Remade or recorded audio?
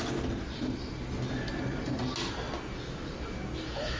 recorded